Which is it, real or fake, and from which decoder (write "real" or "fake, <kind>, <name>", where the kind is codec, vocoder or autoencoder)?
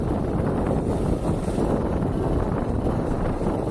real